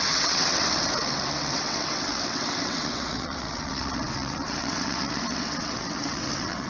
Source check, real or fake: fake